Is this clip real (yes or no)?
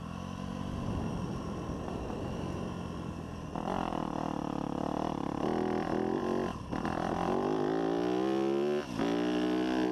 yes